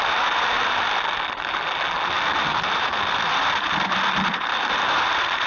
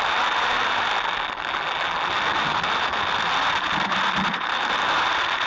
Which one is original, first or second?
second